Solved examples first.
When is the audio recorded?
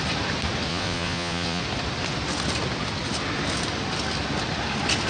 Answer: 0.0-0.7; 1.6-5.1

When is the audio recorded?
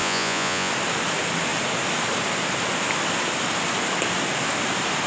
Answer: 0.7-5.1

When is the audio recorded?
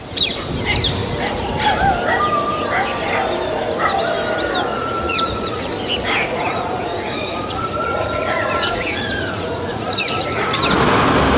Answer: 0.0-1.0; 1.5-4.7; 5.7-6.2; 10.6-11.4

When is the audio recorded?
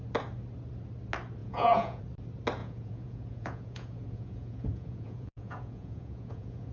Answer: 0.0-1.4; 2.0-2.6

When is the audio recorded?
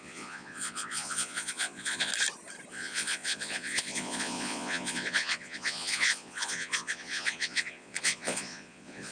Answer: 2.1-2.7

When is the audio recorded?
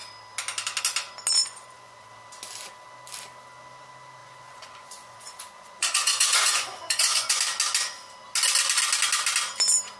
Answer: 0.0-1.4; 2.1-4.2; 7.4-10.0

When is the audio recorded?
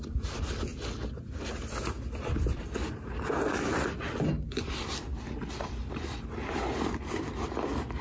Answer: 0.0-8.0